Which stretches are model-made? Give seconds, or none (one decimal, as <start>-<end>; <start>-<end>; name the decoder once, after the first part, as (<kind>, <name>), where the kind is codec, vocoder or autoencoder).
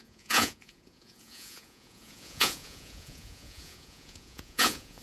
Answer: 0.0-5.0 (vocoder, Vocos)